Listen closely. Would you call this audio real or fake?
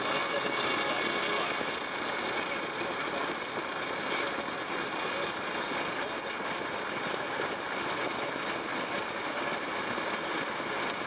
real